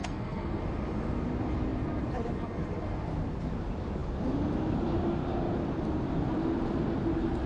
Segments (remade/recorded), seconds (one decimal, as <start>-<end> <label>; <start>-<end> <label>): 0.0-0.6 remade; 0.6-7.5 recorded